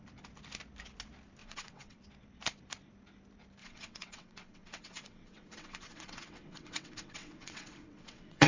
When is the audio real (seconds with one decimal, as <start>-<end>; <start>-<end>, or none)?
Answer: 0.0-1.4; 2.0-3.6